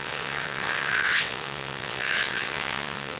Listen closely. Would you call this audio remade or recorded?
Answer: remade